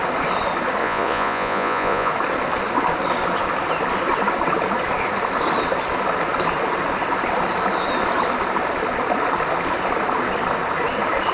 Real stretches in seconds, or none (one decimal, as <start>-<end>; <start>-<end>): 0.0-0.8; 2.1-11.3